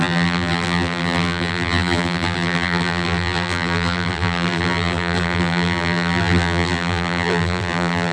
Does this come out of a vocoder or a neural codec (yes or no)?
yes